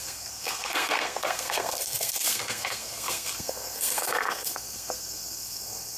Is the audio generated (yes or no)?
yes